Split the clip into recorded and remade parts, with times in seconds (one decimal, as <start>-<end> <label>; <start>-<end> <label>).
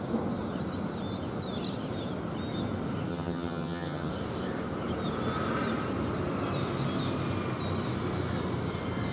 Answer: 0.0-3.1 recorded; 3.1-4.1 remade; 4.1-9.1 recorded